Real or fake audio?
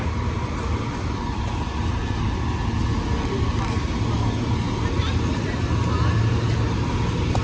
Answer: real